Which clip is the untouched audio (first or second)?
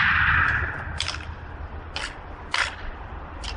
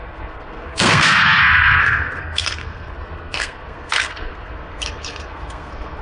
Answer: first